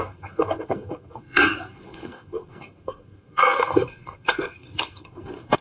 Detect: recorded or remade remade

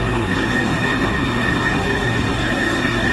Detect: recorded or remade remade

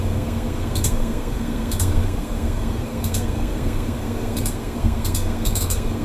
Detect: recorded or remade remade